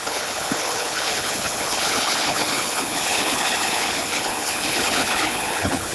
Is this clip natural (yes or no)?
no